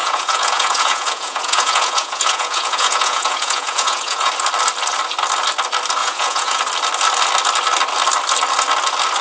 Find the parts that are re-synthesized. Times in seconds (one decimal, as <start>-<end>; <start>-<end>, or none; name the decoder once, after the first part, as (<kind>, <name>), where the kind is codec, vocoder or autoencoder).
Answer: 0.0-4.3 (vocoder, Vocos); 6.0-6.6